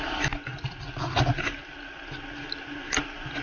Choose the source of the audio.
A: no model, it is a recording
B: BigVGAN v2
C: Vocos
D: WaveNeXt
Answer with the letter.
A